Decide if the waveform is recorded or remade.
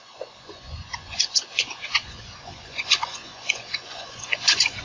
remade